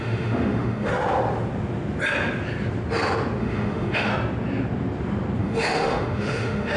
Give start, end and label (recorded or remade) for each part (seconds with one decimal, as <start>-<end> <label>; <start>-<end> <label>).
0.0-0.9 remade; 0.9-3.4 recorded; 3.4-4.1 remade; 4.1-5.4 recorded; 5.4-6.8 remade